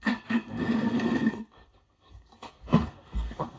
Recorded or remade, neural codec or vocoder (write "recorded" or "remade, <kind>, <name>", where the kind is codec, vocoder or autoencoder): remade, codec, SNAC